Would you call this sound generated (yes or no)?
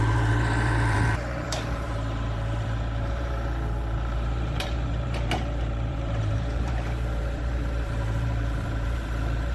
yes